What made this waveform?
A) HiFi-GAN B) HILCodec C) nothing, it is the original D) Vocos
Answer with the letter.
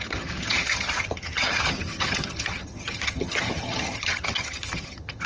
A